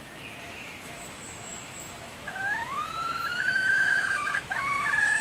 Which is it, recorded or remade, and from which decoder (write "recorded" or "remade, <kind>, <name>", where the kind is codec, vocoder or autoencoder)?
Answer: remade, autoencoder, DAC-VAE